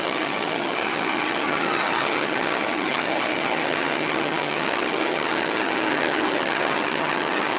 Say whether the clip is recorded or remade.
remade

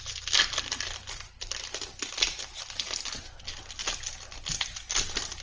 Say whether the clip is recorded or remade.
recorded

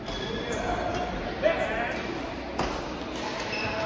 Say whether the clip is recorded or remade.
recorded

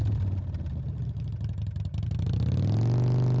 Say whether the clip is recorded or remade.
recorded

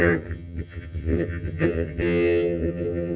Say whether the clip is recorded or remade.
remade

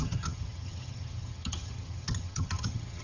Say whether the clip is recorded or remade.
remade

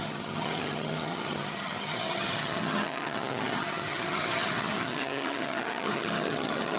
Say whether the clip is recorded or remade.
remade